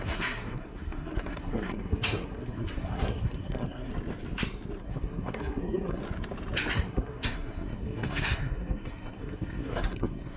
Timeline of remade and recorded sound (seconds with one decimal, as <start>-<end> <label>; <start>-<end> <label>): 0.0-3.9 remade; 3.9-4.8 recorded; 4.8-6.0 remade; 6.0-6.7 recorded; 6.7-10.4 remade